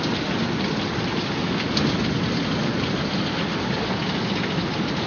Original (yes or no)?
yes